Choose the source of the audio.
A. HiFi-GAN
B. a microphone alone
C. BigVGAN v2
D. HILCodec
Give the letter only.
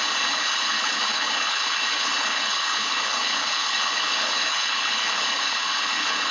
D